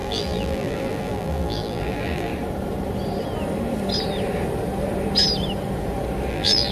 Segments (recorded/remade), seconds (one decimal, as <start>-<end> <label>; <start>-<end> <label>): 0.0-2.3 remade; 2.3-6.3 recorded; 6.3-6.7 remade